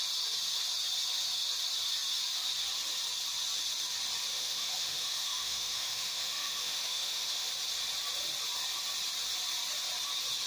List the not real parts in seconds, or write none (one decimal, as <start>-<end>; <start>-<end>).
4.3-7.5